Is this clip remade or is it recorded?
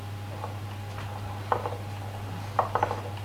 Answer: recorded